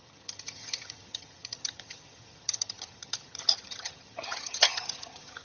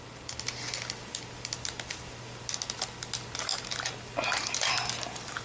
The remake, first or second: first